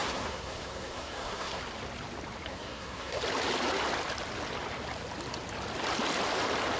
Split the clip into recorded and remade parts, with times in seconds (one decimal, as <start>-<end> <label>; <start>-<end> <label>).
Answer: 0.0-1.6 remade; 1.6-2.5 recorded; 2.5-3.2 remade; 3.2-6.8 recorded